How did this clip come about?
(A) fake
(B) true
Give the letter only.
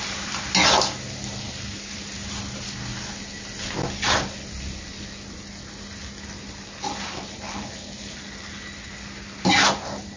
B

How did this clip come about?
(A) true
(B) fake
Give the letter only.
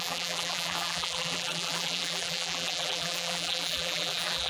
B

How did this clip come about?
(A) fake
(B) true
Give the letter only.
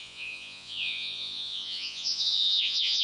A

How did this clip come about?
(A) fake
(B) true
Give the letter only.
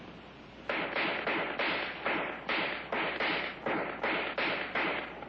B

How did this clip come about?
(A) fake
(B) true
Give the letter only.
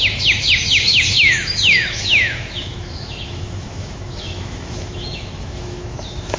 A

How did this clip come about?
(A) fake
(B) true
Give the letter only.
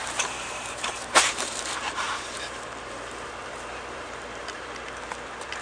A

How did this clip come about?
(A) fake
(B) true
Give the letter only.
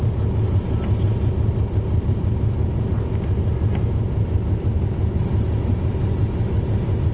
B